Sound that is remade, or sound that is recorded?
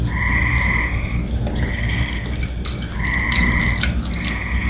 recorded